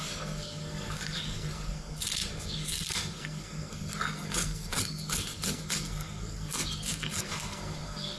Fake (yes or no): yes